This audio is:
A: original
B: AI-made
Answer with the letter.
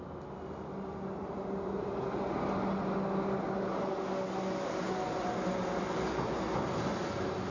A